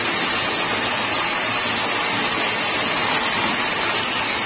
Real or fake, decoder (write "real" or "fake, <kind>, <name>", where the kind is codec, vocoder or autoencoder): real